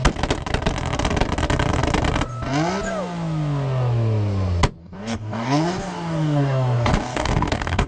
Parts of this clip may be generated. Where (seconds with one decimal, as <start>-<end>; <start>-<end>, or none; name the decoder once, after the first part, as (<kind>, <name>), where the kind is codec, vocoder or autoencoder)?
4.8-7.9 (codec, DAC)